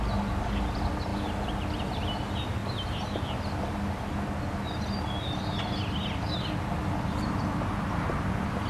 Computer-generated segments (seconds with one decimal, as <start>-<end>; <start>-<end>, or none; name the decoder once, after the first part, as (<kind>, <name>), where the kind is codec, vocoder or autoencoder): none